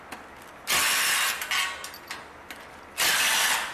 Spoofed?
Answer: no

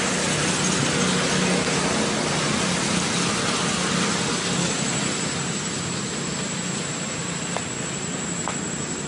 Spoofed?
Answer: no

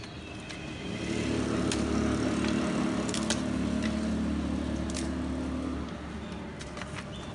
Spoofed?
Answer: no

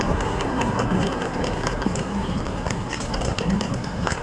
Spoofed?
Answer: yes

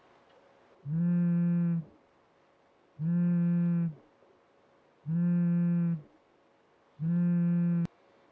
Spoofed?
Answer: no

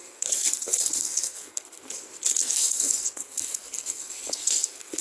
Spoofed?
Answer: yes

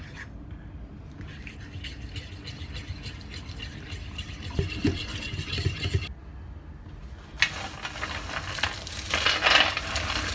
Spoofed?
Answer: no